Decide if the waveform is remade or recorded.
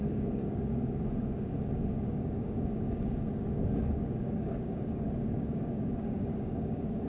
remade